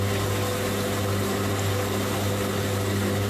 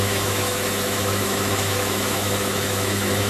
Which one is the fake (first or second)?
second